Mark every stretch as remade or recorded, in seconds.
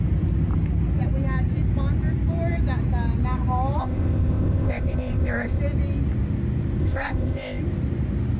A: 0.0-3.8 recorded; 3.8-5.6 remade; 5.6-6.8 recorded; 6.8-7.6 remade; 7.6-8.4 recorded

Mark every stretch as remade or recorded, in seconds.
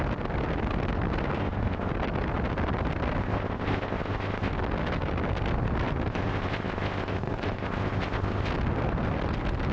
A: 0.0-1.4 recorded; 1.4-1.9 remade; 1.9-3.2 recorded; 3.2-4.5 remade; 4.5-6.1 recorded; 6.1-8.5 remade; 8.5-9.7 recorded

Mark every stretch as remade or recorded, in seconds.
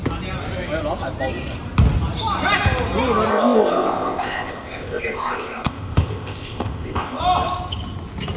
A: 0.0-3.3 recorded; 3.3-7.2 remade; 7.2-8.4 recorded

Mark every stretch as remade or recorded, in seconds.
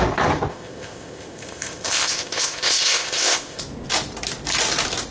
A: 0.0-0.5 recorded; 0.5-3.6 remade; 3.6-5.1 recorded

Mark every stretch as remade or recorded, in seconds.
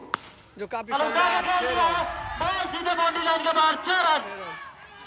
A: 0.0-5.1 recorded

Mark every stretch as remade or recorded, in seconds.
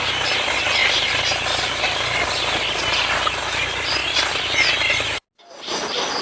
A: 0.0-6.2 recorded